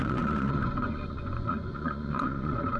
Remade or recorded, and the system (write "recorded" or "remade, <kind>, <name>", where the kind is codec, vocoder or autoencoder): remade, vocoder, Vocos